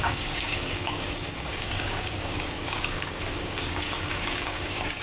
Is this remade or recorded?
remade